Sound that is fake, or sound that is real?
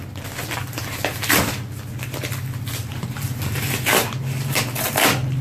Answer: fake